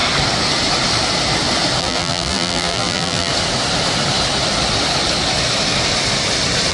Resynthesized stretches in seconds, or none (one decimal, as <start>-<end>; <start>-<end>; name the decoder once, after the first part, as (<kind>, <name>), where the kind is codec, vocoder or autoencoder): 1.8-3.3 (vocoder, BigVGAN v2)